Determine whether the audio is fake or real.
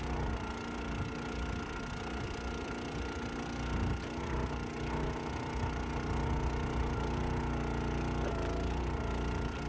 real